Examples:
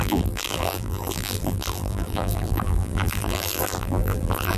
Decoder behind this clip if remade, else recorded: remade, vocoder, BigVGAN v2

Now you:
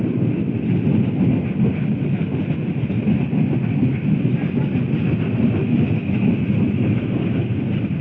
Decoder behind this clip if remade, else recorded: recorded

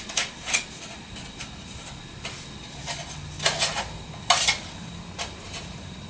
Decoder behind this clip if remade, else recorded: recorded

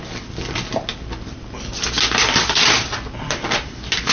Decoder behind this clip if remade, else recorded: recorded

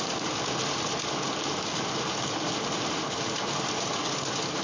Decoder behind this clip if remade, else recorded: recorded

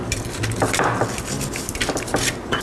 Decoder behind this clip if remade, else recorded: remade, vocoder, BigVGAN v2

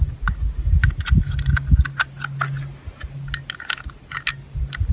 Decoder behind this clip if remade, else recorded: recorded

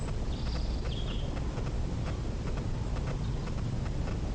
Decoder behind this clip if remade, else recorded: recorded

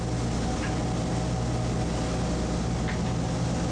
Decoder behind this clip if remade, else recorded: recorded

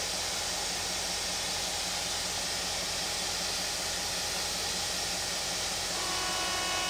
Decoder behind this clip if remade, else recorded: recorded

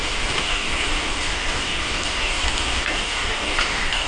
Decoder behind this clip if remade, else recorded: remade, codec, DAC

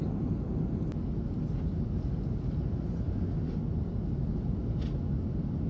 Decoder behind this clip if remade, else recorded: recorded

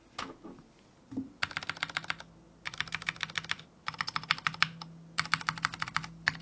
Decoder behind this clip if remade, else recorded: recorded